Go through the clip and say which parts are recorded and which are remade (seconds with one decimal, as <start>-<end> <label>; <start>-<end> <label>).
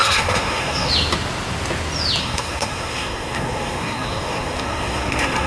0.0-0.9 remade; 0.9-2.2 recorded; 2.2-5.5 remade